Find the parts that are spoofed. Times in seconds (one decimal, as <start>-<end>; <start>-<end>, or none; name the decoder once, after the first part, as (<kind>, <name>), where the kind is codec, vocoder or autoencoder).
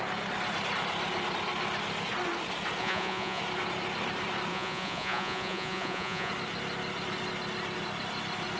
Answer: 2.8-3.4 (vocoder, Vocos); 4.5-6.3